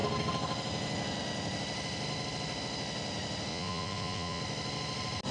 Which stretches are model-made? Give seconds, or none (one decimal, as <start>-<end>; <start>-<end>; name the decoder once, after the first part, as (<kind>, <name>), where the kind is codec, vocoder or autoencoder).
3.5-4.4 (vocoder, Vocos)